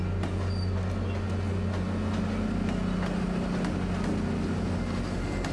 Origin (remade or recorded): recorded